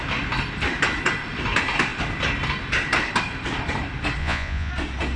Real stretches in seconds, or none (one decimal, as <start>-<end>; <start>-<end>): 0.0-4.2; 4.7-5.2